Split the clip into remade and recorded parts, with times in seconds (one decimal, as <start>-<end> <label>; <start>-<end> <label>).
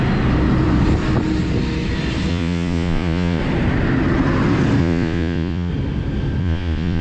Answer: 0.0-2.3 recorded; 2.3-3.4 remade; 3.4-4.8 recorded; 4.8-5.7 remade; 5.7-6.4 recorded; 6.4-7.0 remade